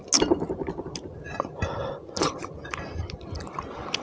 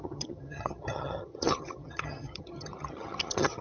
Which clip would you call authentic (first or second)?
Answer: first